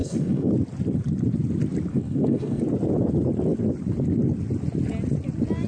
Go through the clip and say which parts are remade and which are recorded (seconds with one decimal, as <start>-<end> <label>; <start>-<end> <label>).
0.0-0.5 remade; 0.5-1.9 recorded; 1.9-2.6 remade; 2.6-5.7 recorded